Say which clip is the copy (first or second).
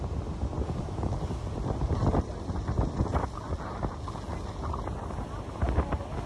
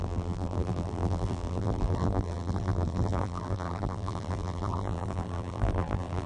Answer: second